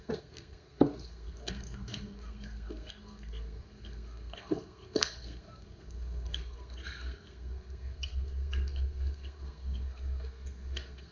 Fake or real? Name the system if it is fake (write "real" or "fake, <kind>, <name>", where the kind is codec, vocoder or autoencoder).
fake, codec, SNAC